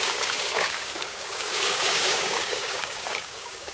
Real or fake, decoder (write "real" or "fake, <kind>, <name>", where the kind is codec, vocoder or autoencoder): fake, codec, DAC